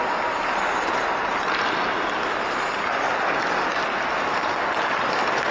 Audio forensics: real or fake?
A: real